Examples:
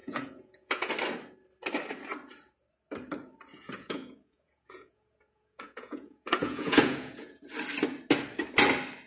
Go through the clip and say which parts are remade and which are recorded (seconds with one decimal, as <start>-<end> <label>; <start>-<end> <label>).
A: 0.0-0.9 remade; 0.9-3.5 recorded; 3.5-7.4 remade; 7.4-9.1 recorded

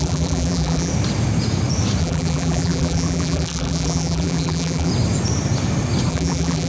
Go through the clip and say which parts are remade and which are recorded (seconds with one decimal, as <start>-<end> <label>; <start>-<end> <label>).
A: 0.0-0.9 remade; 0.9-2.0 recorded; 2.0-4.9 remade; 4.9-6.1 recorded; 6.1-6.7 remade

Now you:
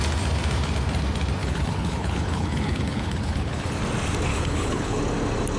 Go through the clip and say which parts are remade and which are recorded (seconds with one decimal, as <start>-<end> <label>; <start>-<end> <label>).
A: 0.0-1.4 recorded; 1.4-3.8 remade; 3.8-4.3 recorded; 4.3-5.0 remade; 5.0-5.6 recorded